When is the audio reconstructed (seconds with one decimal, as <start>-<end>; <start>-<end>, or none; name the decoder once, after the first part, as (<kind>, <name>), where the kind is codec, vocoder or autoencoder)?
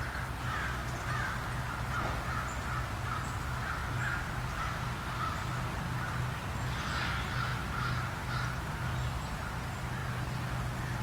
none